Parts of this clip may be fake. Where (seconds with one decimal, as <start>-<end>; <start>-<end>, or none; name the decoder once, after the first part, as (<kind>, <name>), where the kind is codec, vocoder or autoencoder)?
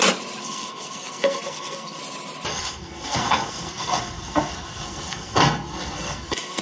0.4-2.0 (codec, SNAC); 2.5-6.6